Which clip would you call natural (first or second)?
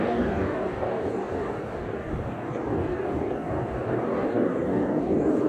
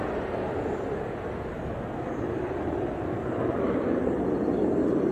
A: second